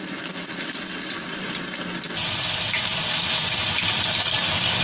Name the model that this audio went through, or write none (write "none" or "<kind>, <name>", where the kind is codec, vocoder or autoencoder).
none